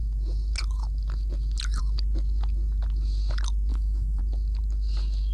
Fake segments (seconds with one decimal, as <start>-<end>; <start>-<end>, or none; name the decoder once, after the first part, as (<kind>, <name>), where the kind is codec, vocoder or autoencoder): 3.7-4.2 (autoencoder, DAC-VAE)